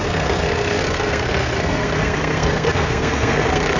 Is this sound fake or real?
fake